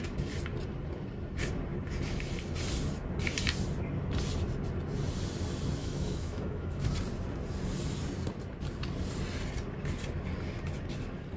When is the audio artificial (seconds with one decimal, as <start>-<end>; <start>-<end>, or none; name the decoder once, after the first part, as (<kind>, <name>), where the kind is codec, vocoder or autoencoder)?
5.8-6.9 (autoencoder, DAC-VAE)